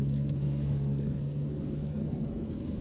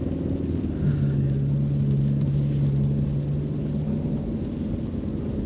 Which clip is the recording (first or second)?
second